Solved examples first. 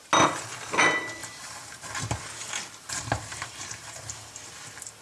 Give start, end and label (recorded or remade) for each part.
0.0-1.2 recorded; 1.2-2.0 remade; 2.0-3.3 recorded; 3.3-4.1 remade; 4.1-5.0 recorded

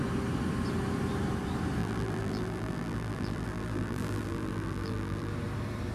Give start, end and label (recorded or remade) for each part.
0.0-1.8 recorded; 1.8-5.3 remade; 5.3-5.9 recorded

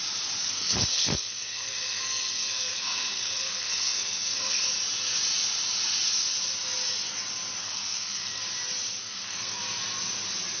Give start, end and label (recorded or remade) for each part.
0.0-0.4 recorded; 0.4-4.6 remade; 4.6-7.6 recorded; 7.6-8.4 remade; 8.4-9.0 recorded; 9.0-9.6 remade; 9.6-10.6 recorded

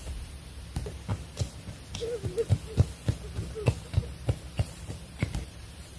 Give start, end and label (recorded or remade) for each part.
0.0-1.1 remade; 1.1-4.5 recorded; 4.5-6.0 remade

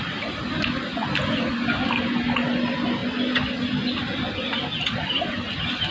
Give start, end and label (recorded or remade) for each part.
0.0-5.9 recorded

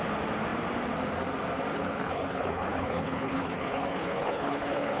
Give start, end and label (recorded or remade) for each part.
0.0-1.7 recorded; 1.7-5.0 remade